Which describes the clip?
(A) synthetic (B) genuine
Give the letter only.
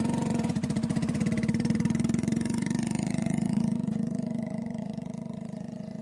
A